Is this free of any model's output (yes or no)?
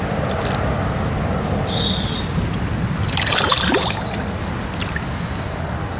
yes